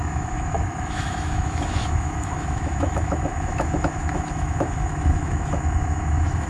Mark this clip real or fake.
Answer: fake